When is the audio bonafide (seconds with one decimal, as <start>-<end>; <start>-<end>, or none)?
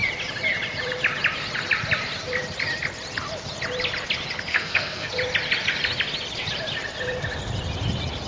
0.0-4.5; 5.1-8.3